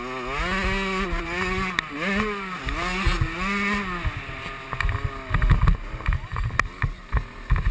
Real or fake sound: real